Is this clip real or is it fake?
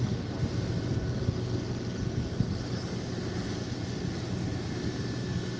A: real